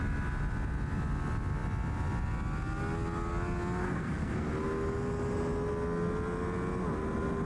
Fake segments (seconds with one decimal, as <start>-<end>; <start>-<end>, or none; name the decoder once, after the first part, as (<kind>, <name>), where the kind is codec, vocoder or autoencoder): 3.8-4.5 (codec, SNAC)